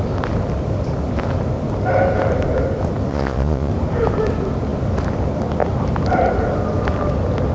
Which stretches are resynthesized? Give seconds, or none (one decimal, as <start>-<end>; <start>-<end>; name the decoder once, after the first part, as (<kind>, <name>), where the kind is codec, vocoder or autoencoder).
3.1-3.7 (vocoder, Vocos)